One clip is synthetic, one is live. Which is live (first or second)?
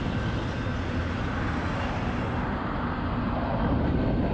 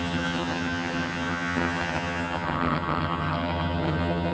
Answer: first